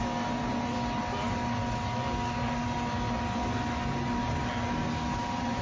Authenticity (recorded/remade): recorded